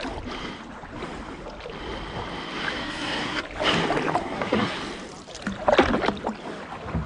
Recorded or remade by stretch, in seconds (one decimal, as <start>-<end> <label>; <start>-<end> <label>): 0.0-2.8 recorded; 2.8-3.4 remade; 3.4-4.2 recorded; 4.2-4.8 remade; 4.8-7.1 recorded